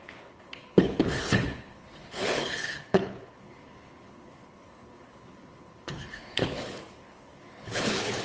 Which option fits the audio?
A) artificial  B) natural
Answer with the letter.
A